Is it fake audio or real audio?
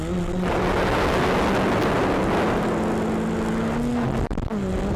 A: real